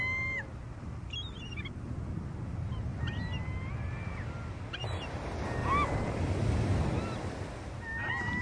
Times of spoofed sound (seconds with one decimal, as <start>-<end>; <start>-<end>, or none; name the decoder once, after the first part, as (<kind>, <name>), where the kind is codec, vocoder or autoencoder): 5.6-6.9 (vocoder, BigVGAN v2)